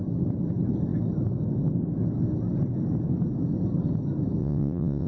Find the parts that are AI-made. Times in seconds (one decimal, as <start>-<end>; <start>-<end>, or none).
4.4-5.1